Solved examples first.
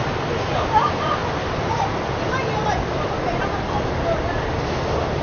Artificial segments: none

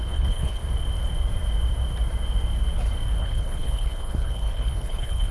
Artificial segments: 0.0-0.6 (codec, HILCodec); 3.2-5.3

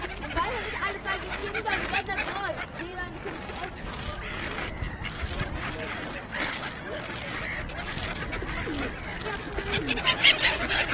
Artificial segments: 1.4-2.1 (vocoder, BigVGAN v2); 2.9-7.6